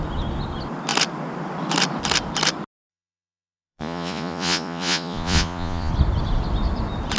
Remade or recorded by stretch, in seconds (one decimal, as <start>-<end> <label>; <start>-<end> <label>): 0.0-2.9 recorded; 2.9-5.9 remade; 5.9-7.2 recorded